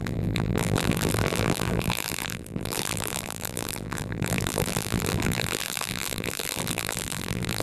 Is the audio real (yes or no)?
no